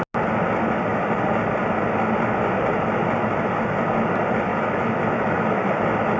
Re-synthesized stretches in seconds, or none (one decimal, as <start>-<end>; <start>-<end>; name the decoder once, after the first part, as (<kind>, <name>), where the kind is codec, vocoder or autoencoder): 4.5-5.8 (autoencoder, DAC-VAE)